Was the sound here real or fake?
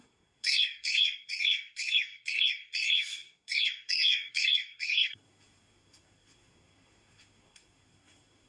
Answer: fake